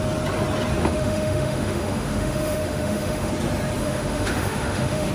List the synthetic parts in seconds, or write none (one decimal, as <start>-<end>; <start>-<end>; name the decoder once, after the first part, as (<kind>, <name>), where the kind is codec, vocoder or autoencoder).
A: 0.8-3.3 (autoencoder, DAC-VAE); 3.8-5.1